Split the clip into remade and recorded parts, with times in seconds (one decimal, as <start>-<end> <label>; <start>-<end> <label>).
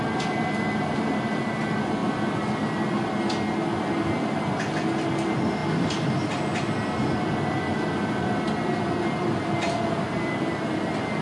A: 0.0-11.2 recorded